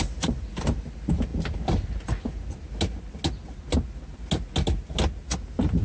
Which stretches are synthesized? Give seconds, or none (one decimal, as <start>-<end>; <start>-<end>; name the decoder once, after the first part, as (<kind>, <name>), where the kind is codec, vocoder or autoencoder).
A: none

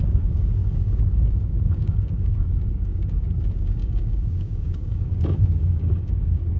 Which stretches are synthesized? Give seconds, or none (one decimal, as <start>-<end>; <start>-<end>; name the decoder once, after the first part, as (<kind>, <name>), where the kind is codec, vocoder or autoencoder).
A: 0.0-6.6 (codec, DAC)